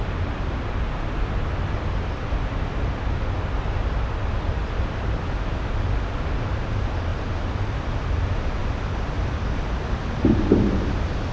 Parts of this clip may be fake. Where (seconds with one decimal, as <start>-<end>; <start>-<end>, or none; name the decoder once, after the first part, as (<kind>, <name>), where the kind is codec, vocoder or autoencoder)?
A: none